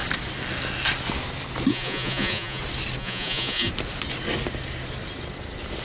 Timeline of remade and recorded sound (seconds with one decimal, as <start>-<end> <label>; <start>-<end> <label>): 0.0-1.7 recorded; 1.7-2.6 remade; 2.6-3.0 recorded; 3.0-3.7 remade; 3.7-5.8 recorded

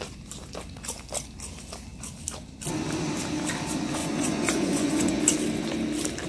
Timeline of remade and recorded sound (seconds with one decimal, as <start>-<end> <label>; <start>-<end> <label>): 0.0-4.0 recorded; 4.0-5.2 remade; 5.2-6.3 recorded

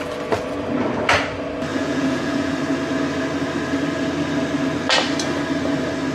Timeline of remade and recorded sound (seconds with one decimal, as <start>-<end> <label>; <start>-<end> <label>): 0.0-1.7 recorded; 1.7-2.5 remade; 2.5-6.1 recorded